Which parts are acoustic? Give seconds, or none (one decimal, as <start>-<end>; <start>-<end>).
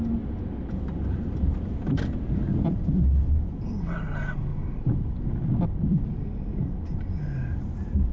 0.0-4.5; 5.1-8.1